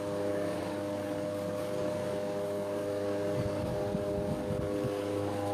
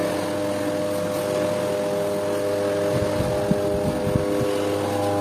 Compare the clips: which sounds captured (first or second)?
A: second